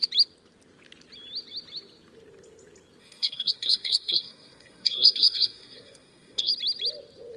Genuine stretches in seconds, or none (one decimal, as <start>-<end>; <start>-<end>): 0.0-3.0; 6.5-7.4